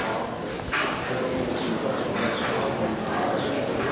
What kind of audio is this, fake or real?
real